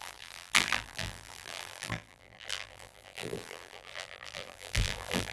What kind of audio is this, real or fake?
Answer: fake